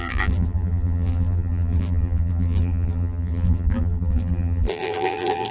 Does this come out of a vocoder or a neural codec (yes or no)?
yes